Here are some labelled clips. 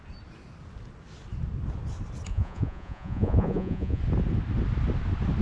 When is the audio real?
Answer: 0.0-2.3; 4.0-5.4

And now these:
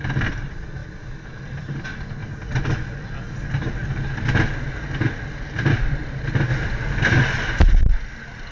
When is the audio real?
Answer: 0.0-8.5

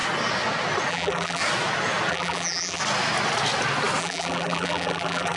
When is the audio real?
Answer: 0.0-0.9; 1.4-2.1; 2.8-4.0

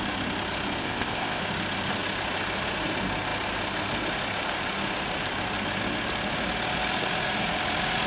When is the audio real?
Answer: 0.0-0.8; 1.4-8.1

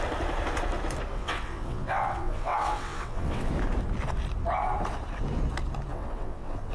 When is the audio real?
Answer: 0.0-1.1; 3.5-5.9

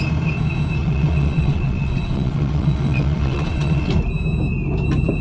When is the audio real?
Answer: 0.0-0.8; 3.9-5.2

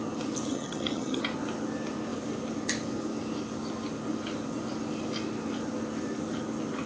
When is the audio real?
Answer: 0.0-0.5; 1.2-6.9